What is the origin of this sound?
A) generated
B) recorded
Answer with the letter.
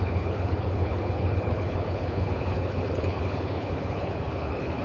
A